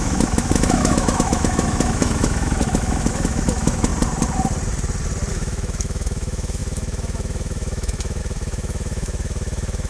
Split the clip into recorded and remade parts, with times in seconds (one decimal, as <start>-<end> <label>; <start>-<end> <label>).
0.0-3.9 remade; 3.9-5.3 recorded; 5.3-9.9 remade